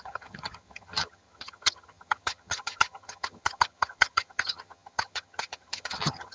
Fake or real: fake